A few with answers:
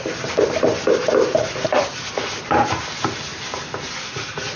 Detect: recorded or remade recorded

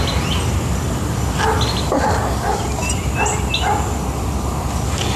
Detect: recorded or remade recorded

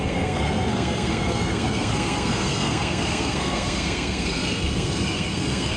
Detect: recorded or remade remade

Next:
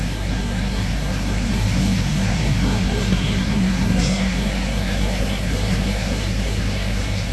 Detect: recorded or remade remade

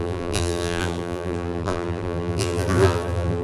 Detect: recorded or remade remade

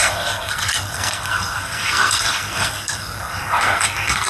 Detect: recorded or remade remade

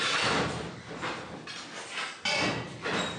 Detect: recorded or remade recorded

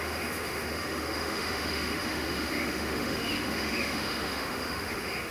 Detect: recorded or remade remade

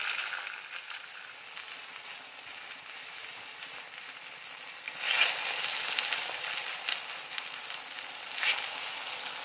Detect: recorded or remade recorded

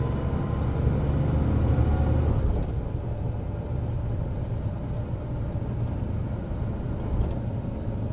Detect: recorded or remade recorded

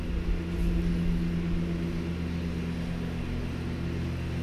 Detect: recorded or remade recorded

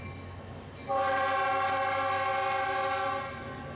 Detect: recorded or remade recorded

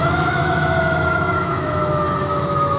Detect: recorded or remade remade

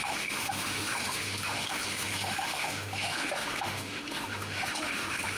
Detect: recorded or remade remade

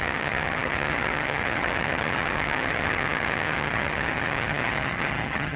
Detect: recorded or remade remade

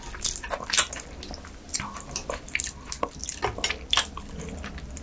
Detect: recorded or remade recorded